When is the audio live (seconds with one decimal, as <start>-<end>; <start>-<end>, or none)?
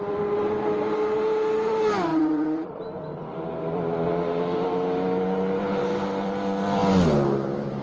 0.0-2.1; 2.8-7.8